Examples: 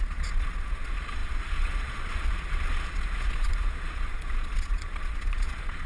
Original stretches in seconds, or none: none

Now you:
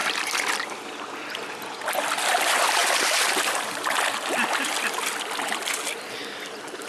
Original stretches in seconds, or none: 0.0-0.5; 2.8-6.9